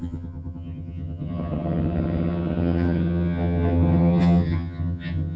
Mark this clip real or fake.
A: fake